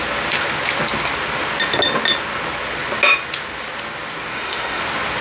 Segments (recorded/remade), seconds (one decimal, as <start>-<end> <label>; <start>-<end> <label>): 0.0-4.3 recorded; 4.3-4.8 remade; 4.8-5.2 recorded